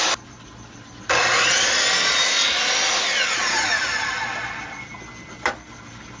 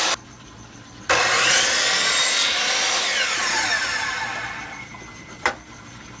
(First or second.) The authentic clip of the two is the first